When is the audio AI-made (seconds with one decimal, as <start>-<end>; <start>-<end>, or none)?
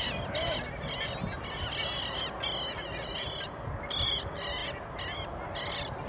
none